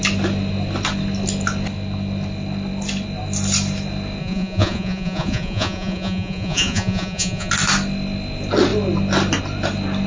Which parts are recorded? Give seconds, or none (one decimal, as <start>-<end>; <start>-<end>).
0.0-4.2; 7.5-10.1

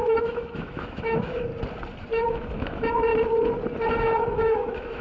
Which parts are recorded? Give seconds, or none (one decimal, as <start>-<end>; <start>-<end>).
1.5-2.3; 3.1-4.0

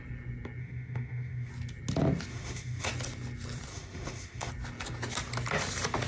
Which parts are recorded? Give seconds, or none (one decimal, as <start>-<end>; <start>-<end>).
0.0-0.6; 1.5-2.3; 2.9-3.7; 4.5-6.1

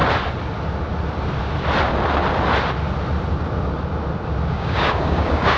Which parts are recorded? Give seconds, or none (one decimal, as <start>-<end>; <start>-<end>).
0.0-4.5

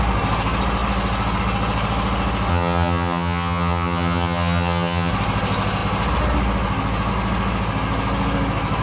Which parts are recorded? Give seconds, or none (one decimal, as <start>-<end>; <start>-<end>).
0.0-2.5; 5.1-8.8

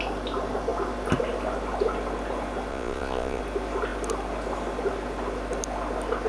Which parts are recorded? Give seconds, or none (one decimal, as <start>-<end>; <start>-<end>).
0.0-2.7; 3.4-6.3

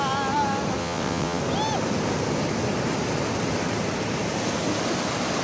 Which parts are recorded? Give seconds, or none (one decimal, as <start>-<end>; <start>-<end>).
0.0-0.8; 1.4-5.4

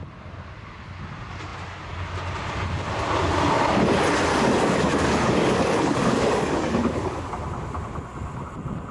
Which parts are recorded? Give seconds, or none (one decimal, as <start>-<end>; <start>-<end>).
0.0-4.3; 7.3-8.9